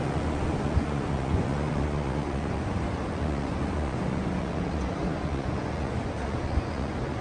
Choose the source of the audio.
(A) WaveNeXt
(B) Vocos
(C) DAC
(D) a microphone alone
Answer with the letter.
B